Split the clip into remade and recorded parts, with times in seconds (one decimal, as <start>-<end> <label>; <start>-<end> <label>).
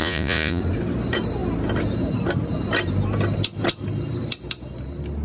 0.0-0.6 remade; 0.6-5.2 recorded